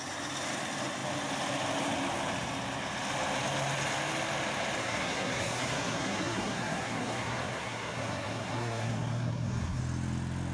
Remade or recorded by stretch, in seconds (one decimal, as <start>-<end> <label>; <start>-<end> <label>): 0.0-4.8 recorded; 4.8-9.8 remade; 9.8-10.5 recorded